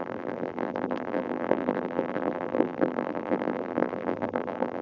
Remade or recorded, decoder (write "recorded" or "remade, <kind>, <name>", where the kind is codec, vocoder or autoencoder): remade, vocoder, BigVGAN v2